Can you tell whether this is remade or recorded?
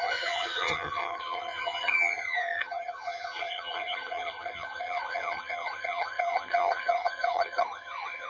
remade